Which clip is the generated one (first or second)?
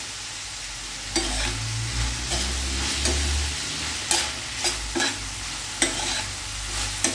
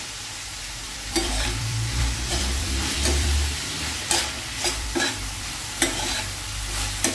second